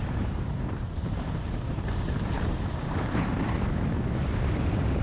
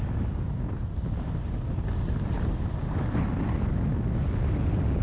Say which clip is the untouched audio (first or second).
second